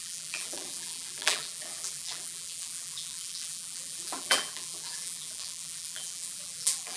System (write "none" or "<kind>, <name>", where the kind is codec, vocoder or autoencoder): vocoder, BigVGAN v2